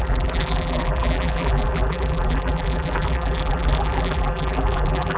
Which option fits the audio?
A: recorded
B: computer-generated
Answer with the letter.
B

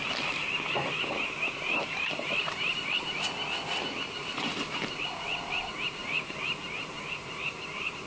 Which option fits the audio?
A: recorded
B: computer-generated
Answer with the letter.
A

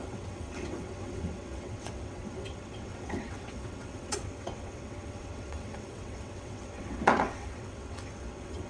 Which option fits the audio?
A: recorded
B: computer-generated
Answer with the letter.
B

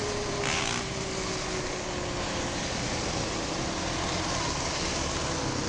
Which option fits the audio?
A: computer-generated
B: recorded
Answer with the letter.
B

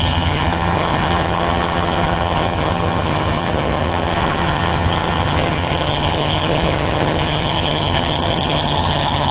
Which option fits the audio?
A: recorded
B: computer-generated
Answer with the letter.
B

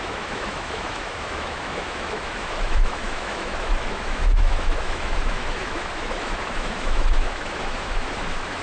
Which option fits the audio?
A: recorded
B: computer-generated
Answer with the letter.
B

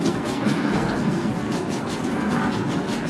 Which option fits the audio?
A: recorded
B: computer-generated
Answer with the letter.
B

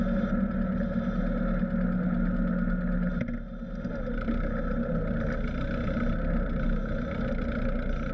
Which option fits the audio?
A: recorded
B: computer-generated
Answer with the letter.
A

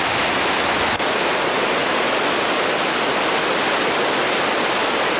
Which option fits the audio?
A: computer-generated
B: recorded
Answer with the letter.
B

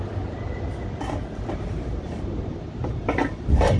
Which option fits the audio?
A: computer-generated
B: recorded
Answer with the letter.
A